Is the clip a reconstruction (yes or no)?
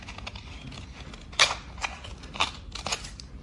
no